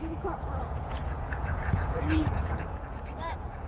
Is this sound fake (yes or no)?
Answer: yes